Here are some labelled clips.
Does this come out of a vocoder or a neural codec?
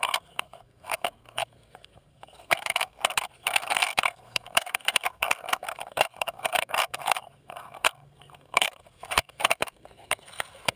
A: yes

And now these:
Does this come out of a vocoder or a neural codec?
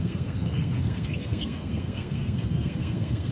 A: yes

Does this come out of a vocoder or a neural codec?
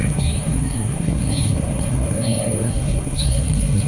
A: yes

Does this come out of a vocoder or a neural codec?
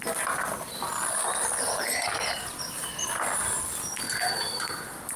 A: no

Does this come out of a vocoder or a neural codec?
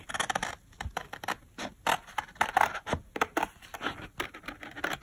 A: no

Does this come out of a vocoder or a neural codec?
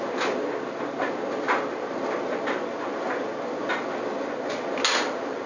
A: no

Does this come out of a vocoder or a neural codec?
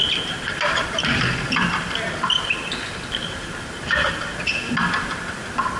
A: no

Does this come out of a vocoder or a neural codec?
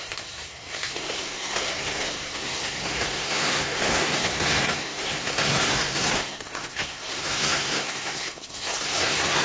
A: yes